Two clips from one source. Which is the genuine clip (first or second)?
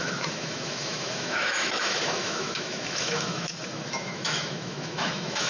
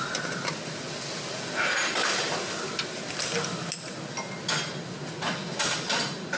second